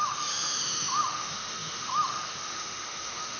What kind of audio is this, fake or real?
fake